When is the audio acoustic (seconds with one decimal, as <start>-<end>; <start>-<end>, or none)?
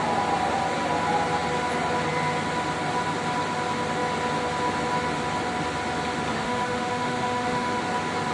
0.0-6.3; 7.8-8.3